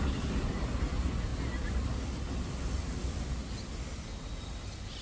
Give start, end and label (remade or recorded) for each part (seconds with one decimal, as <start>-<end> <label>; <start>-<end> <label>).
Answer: 0.0-5.0 recorded